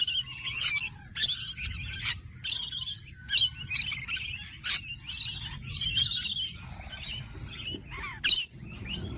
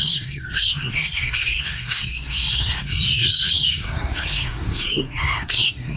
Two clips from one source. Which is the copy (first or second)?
second